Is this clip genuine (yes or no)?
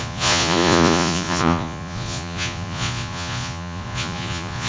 no